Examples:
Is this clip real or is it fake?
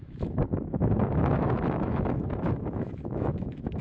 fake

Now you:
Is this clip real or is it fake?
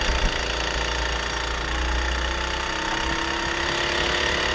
real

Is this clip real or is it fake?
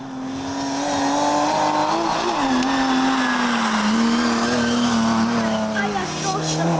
real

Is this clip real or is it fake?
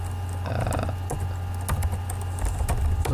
real